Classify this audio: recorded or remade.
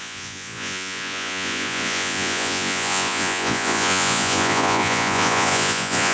remade